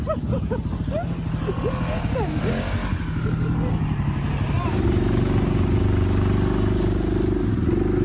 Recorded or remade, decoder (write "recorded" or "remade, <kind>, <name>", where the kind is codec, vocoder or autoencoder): recorded